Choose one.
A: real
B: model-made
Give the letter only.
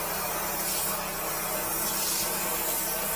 A